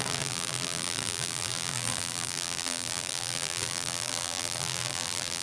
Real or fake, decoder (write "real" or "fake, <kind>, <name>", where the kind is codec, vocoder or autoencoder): fake, vocoder, BigVGAN v2